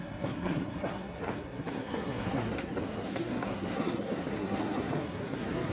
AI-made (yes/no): yes